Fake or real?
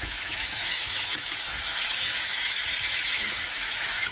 fake